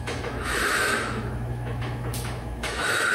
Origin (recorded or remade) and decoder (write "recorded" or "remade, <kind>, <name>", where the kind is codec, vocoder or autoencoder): remade, autoencoder, DAC-VAE